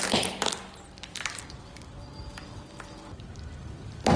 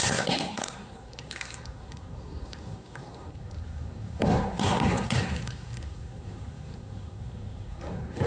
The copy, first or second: second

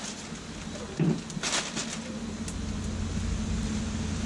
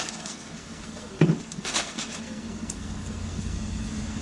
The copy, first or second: second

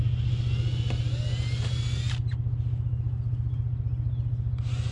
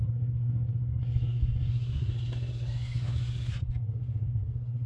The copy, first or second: second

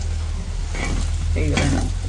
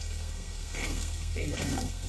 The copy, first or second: second